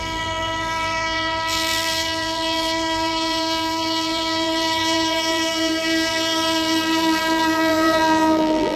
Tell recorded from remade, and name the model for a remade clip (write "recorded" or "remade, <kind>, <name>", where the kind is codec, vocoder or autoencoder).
remade, vocoder, BigVGAN v2